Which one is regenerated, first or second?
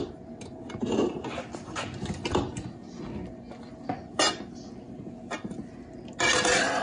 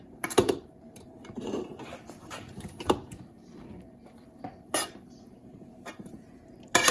second